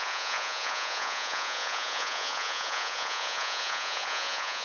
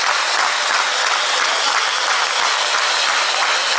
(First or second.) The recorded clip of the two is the second